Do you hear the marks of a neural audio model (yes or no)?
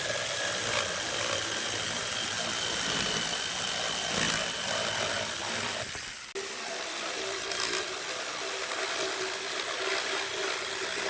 no